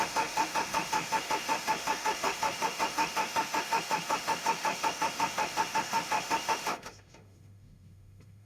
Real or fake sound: fake